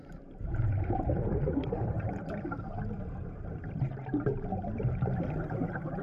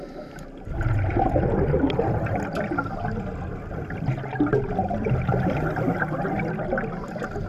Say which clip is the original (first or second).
second